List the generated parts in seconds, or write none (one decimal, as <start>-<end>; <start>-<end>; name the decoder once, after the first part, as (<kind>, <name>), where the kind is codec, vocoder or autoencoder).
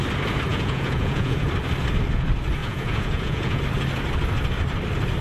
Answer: 0.5-1.5 (vocoder, Vocos); 2.6-3.6